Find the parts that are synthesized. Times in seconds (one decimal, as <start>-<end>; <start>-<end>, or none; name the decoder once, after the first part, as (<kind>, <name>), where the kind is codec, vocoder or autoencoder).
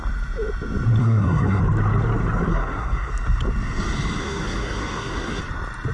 1.0-1.6 (codec, SNAC); 2.5-3.1; 4.2-5.4